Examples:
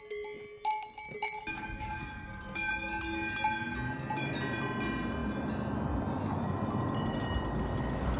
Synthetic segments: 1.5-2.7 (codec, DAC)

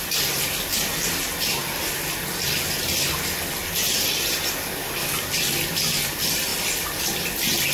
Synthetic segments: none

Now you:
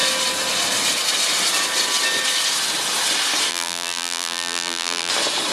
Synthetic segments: 3.5-5.1 (vocoder, BigVGAN v2)

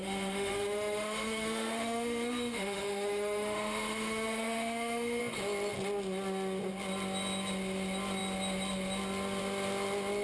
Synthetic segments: 0.0-5.2 (autoencoder, DAC-VAE)

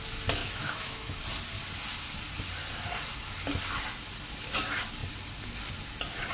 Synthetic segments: 0.4-1.2 (autoencoder, DAC-VAE)

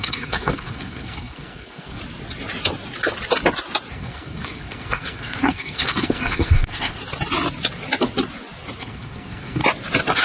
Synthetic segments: 0.0-2.0 (codec, SNAC); 3.9-7.0; 8.8-9.6

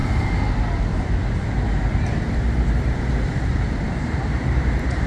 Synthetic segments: 3.1-5.1 (vocoder, BigVGAN v2)